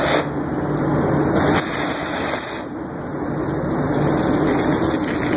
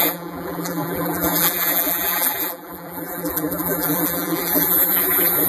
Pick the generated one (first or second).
second